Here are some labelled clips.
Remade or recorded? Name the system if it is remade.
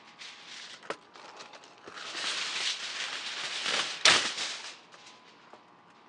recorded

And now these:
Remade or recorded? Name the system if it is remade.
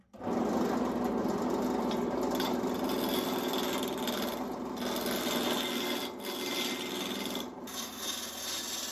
recorded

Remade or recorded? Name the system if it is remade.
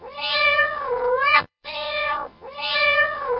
remade, vocoder, Vocos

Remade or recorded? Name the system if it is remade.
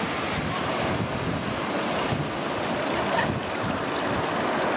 recorded